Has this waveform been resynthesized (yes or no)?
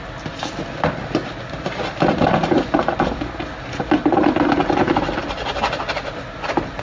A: no